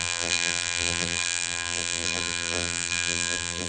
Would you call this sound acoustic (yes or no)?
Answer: no